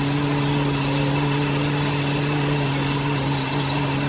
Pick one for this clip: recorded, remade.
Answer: recorded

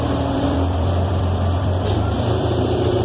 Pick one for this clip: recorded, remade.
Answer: remade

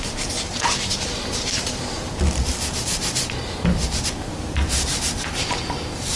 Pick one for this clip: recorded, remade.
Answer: remade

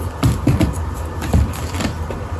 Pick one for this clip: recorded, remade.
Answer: remade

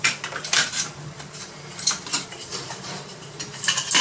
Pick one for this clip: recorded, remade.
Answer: remade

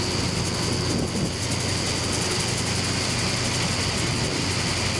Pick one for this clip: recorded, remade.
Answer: recorded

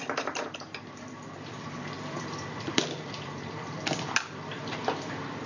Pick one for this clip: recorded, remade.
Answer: remade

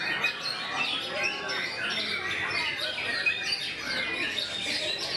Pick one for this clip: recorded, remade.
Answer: recorded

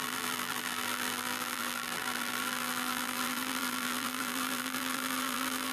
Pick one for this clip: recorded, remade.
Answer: remade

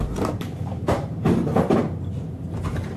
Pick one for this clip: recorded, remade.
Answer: remade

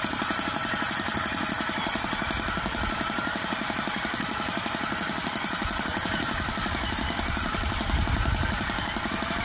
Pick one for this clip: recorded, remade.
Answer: remade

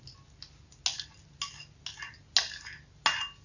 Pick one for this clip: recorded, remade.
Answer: recorded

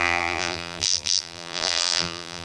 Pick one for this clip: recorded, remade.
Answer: remade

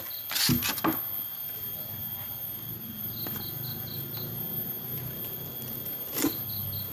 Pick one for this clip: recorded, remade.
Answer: recorded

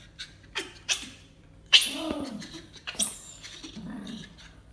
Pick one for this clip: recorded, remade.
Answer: remade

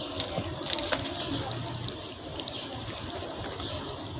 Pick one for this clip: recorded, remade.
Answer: recorded